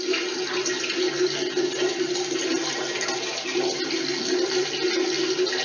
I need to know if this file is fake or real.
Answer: real